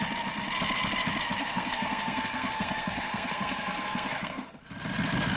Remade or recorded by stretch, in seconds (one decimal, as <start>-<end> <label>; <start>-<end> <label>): 0.0-1.4 recorded; 1.4-4.6 remade; 4.6-5.4 recorded